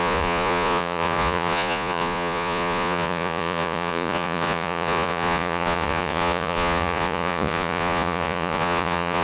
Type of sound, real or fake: fake